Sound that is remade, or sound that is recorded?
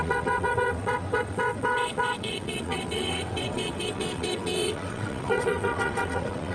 remade